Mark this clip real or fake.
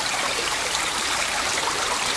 fake